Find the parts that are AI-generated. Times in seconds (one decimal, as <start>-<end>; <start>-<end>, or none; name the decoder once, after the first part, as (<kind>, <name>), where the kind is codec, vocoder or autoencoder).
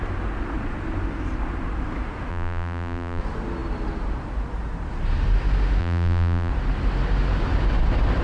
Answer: 2.3-3.2 (vocoder, BigVGAN v2); 5.8-6.5